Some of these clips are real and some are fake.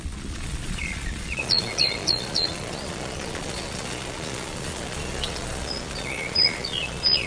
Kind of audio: fake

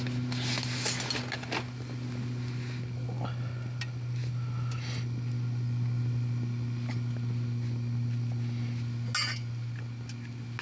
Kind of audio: real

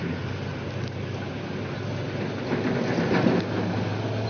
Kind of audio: real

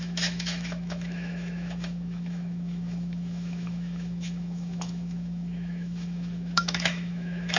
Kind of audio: fake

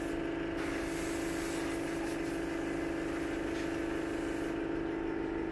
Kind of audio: real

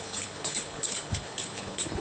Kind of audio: fake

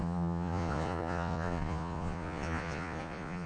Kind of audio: fake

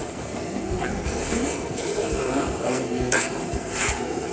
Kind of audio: fake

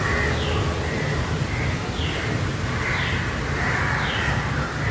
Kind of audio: real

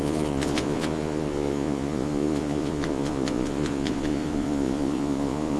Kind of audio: fake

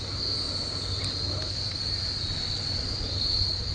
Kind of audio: real